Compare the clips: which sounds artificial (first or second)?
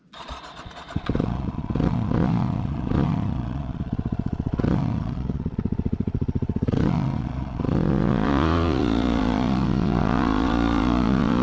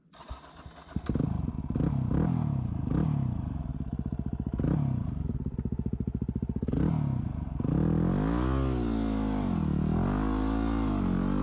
first